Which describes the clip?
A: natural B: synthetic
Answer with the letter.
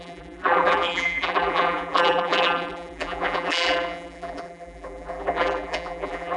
B